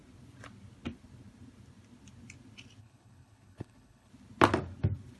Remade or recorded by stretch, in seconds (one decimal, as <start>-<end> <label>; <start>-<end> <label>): 0.0-2.8 recorded; 2.8-4.1 remade; 4.1-5.2 recorded